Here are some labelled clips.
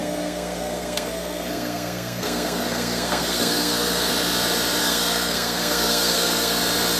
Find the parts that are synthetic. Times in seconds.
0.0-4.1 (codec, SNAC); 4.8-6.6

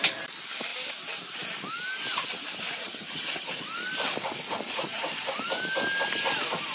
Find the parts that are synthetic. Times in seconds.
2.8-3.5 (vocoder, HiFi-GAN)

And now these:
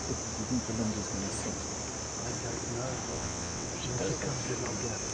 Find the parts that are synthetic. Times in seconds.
3.1-3.7 (vocoder, WaveNeXt)

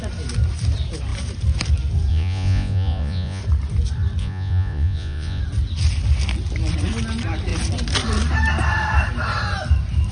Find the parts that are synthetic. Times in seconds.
2.1-3.4 (vocoder, Vocos); 4.2-5.4

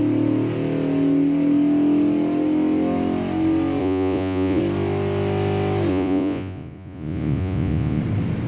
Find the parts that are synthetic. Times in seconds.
3.8-4.6 (vocoder, Vocos); 5.9-8.0